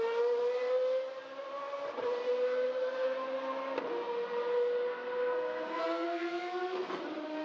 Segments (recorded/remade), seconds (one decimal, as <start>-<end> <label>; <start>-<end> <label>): 0.0-4.9 recorded; 4.9-7.0 remade; 7.0-7.4 recorded